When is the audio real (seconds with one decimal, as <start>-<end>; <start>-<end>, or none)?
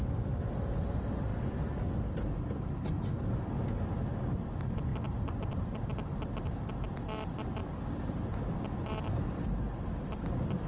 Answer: 0.0-10.7